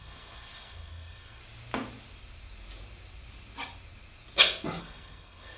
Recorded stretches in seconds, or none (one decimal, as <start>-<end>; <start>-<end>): 1.4-4.8